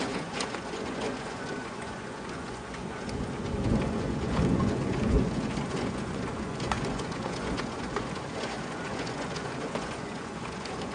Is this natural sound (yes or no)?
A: no